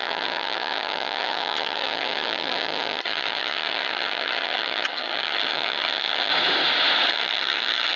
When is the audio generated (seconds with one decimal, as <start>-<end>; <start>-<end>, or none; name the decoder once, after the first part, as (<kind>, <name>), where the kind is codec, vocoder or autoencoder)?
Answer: 0.0-6.3 (vocoder, HiFi-GAN); 7.1-8.0